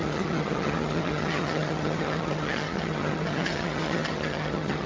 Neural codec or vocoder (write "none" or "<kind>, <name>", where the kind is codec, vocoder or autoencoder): vocoder, HiFi-GAN